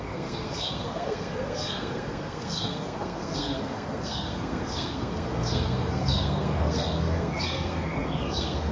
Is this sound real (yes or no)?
no